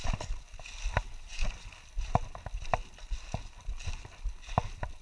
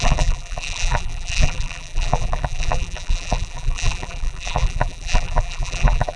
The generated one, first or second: second